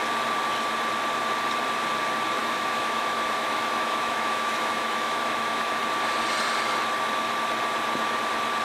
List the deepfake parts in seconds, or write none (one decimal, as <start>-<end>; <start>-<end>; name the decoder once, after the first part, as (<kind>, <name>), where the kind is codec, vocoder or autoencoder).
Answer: 2.4-5.8 (autoencoder, DAC-VAE)